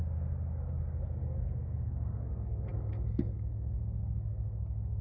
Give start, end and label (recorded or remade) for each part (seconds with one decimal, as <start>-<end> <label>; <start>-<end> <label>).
0.0-2.2 recorded; 2.2-5.0 remade